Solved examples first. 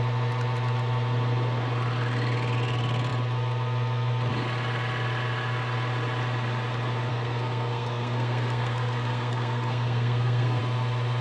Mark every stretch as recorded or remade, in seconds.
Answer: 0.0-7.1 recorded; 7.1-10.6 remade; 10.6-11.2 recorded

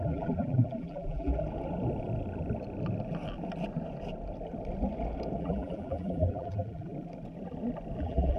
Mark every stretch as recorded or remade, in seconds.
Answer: 0.0-1.3 remade; 1.3-5.4 recorded; 5.4-6.9 remade; 6.9-8.0 recorded; 8.0-8.4 remade

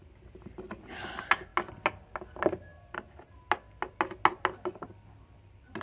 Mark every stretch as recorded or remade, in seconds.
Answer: 0.0-5.8 recorded

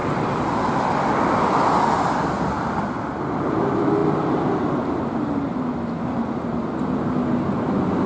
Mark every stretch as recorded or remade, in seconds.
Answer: 0.0-8.1 recorded

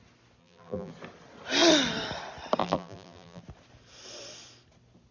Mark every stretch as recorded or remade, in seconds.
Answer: 0.0-0.4 recorded; 0.4-0.9 remade; 0.9-2.6 recorded; 2.6-3.4 remade; 3.4-5.1 recorded

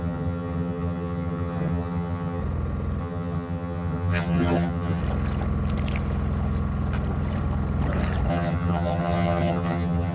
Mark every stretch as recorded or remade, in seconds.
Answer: 0.0-2.4 remade; 2.4-3.0 recorded; 3.0-5.0 remade; 5.0-8.3 recorded; 8.3-10.1 remade

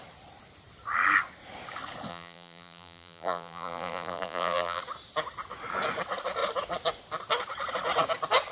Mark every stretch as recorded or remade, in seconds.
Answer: 0.0-2.1 recorded; 2.1-4.8 remade; 4.8-8.5 recorded

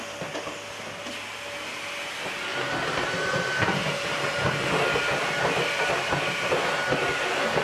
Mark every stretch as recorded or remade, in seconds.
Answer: 0.0-3.8 recorded; 3.8-4.7 remade; 4.7-7.6 recorded